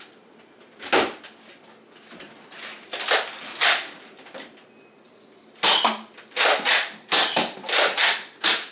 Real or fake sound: real